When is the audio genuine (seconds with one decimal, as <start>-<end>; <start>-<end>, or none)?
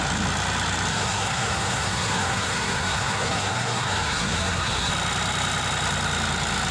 0.0-0.9; 4.9-6.7